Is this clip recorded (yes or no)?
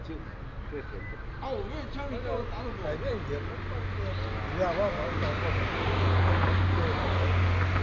yes